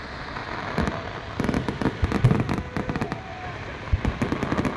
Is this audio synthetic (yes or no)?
no